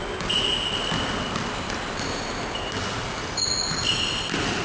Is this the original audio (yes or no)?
yes